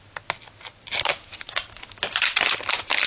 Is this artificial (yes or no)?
no